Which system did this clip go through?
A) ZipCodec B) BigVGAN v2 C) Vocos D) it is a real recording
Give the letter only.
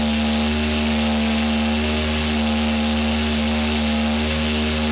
D